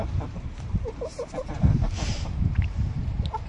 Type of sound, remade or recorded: remade